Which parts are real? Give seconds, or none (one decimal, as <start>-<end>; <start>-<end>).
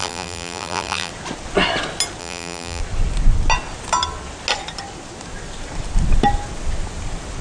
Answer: 1.1-2.2; 2.8-7.4